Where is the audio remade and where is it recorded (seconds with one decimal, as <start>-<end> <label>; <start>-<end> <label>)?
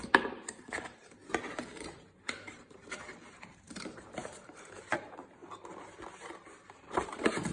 0.0-1.2 remade; 1.2-1.8 recorded; 1.8-5.4 remade; 5.4-6.1 recorded; 6.1-7.5 remade